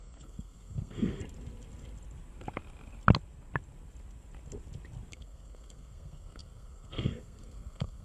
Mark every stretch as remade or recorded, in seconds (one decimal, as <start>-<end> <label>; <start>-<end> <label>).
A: 0.0-1.2 remade; 1.2-5.1 recorded; 5.1-8.0 remade